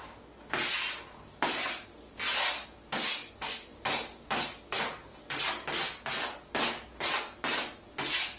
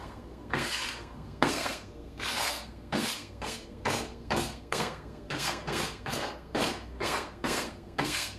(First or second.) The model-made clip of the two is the second